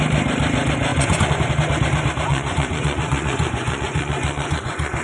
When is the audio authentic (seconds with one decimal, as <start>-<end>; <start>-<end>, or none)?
0.0-0.9; 1.5-2.3